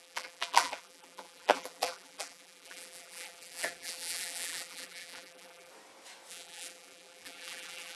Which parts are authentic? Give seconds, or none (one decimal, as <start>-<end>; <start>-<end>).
5.7-6.3